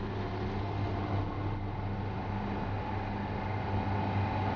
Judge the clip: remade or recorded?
recorded